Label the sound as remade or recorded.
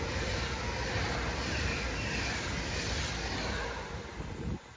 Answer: recorded